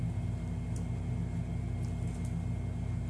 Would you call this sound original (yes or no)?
yes